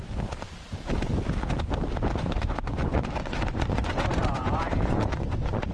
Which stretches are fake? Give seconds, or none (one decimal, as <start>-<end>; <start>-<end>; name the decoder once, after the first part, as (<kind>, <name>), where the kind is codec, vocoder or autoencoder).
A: 2.1-5.7 (vocoder, Vocos)